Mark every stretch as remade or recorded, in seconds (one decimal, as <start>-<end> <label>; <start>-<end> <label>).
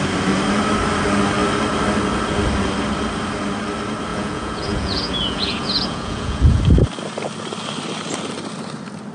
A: 0.0-4.1 recorded; 4.1-6.6 remade; 6.6-9.1 recorded